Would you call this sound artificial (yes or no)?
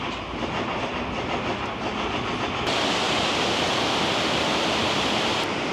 no